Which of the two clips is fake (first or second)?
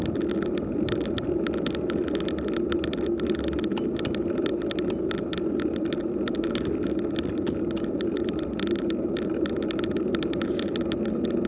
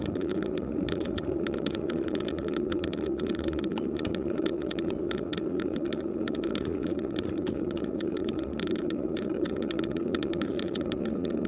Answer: second